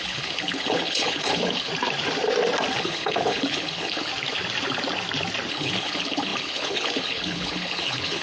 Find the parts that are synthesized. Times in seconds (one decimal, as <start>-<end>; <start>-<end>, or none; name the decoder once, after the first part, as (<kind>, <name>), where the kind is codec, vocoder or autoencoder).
0.0-1.7 (codec, HILCodec); 2.8-4.1; 5.5-8.2